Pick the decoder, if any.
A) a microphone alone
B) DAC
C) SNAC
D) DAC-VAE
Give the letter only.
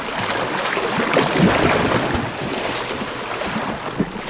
A